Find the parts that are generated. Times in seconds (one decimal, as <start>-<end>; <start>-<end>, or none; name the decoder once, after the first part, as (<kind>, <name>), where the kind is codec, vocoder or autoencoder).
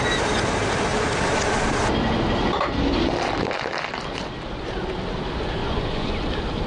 5.6-6.3 (vocoder, Vocos)